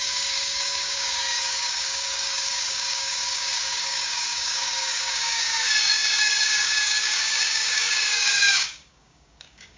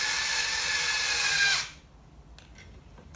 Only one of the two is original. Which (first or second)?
second